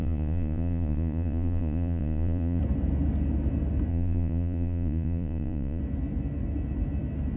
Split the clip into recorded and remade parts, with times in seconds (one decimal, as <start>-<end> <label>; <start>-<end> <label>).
0.0-2.6 remade; 2.6-3.9 recorded; 3.9-5.8 remade; 5.8-7.4 recorded